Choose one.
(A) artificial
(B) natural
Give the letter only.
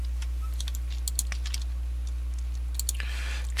B